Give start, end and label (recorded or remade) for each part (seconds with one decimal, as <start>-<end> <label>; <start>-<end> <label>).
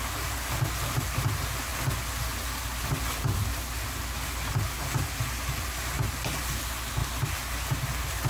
0.0-8.3 recorded